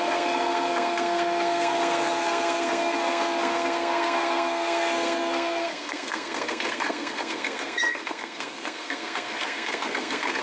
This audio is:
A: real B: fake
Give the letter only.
B